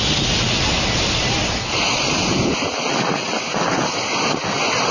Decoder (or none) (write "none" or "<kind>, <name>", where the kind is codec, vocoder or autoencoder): none